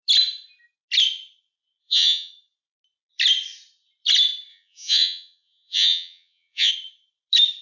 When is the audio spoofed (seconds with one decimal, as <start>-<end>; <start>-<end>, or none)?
1.8-2.3; 4.5-6.7